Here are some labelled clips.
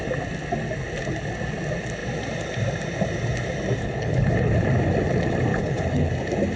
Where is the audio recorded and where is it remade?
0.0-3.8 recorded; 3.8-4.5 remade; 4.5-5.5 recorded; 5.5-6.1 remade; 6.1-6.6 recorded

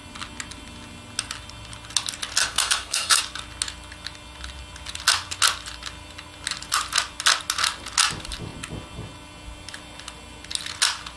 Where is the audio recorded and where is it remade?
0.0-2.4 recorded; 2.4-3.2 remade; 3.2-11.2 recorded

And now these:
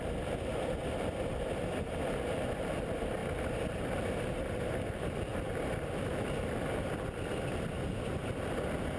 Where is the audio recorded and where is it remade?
0.0-3.2 recorded; 3.2-4.8 remade; 4.8-9.0 recorded

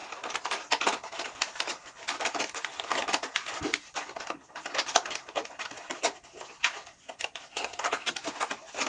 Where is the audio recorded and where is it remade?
0.0-7.5 recorded; 7.5-8.1 remade; 8.1-8.9 recorded

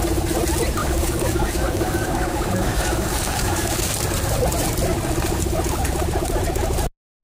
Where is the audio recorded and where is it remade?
0.0-0.8 recorded; 0.8-3.9 remade; 3.9-7.2 recorded

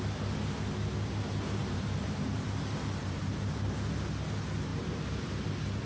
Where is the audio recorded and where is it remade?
0.0-1.6 recorded; 1.6-3.7 remade; 3.7-4.7 recorded; 4.7-5.4 remade; 5.4-5.9 recorded